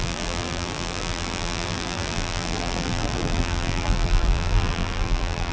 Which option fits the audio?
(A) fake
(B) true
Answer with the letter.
A